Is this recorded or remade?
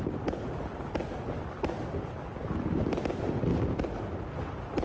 recorded